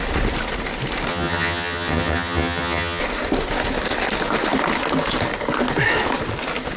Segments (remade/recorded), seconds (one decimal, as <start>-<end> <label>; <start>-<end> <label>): 0.0-1.1 recorded; 1.1-3.0 remade; 3.0-6.8 recorded